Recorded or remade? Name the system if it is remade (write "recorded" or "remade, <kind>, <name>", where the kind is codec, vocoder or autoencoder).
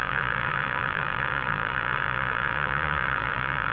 remade, vocoder, Vocos